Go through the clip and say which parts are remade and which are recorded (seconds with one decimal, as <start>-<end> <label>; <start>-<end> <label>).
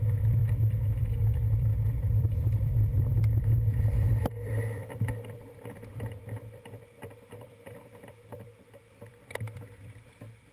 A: 0.0-0.4 remade; 0.4-1.5 recorded; 1.5-10.5 remade